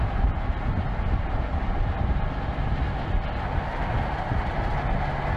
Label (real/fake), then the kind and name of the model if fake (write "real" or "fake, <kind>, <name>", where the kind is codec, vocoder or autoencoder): real